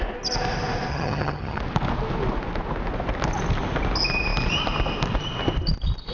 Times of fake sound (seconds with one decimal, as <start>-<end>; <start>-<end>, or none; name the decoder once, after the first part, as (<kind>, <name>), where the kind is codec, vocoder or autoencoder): 0.9-1.6 (vocoder, HiFi-GAN)